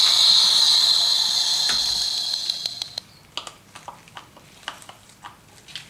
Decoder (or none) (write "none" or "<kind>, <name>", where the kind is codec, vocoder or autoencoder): none